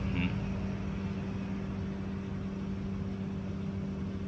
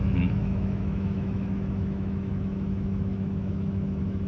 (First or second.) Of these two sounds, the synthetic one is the second